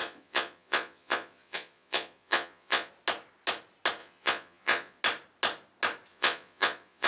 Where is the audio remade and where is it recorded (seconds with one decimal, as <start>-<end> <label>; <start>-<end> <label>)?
0.0-2.9 remade; 2.9-4.0 recorded; 4.0-5.0 remade; 5.0-6.1 recorded; 6.1-7.1 remade